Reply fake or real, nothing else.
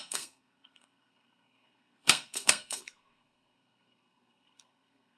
fake